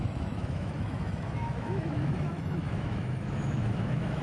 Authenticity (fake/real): fake